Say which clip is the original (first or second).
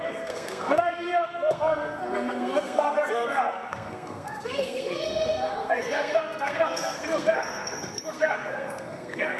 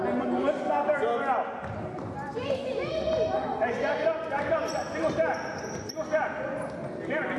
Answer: second